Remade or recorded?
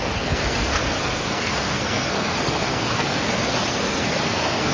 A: remade